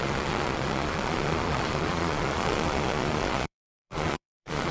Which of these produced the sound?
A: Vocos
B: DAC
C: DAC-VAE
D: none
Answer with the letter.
A